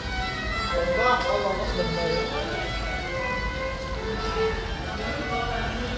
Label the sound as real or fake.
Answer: real